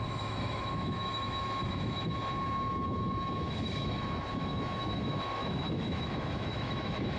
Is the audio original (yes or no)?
no